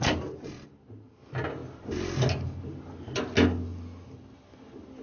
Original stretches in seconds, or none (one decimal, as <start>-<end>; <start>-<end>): 0.0-5.0